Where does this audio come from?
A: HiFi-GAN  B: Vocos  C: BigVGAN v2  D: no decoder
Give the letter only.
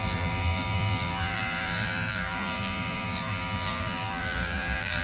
C